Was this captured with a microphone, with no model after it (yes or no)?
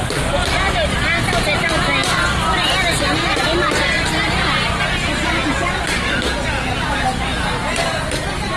yes